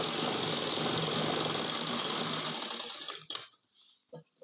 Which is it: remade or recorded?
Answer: recorded